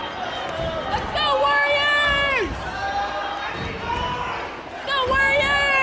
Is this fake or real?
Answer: real